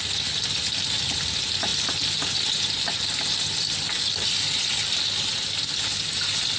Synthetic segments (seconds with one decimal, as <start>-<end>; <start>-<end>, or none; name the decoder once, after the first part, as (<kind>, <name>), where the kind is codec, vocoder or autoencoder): none